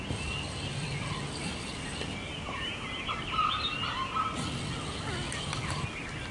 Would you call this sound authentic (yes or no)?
yes